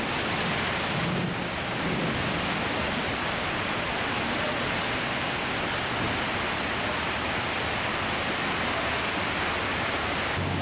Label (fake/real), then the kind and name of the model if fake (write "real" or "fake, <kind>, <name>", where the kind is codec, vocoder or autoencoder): real